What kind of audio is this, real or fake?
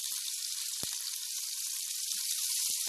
fake